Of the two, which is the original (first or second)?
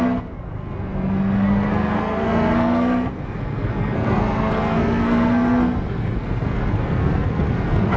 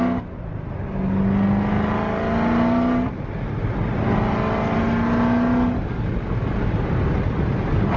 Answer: second